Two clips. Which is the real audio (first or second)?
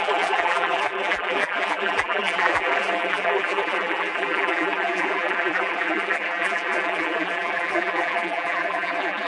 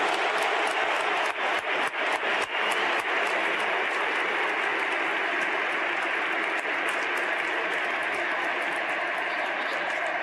second